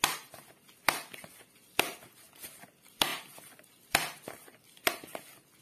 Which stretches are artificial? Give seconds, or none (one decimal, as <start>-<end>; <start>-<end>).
none